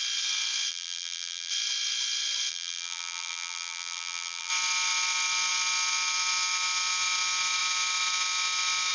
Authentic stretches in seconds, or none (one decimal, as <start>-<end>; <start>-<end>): 0.0-0.7; 1.5-2.5; 4.5-8.9